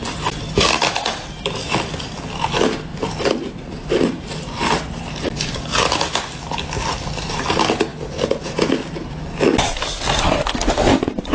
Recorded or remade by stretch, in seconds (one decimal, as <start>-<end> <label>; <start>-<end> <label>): 0.0-2.9 recorded; 2.9-5.6 remade; 5.6-11.3 recorded